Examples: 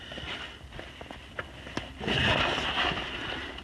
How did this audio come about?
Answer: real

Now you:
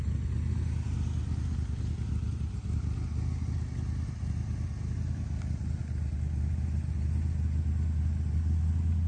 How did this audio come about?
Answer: real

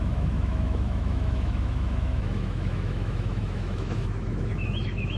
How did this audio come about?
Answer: fake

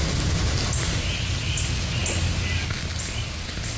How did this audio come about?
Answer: real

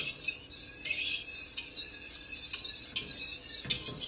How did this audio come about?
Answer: real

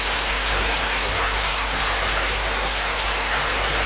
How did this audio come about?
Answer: fake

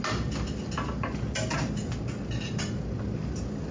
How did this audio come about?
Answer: real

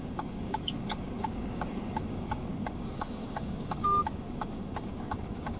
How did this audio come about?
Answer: fake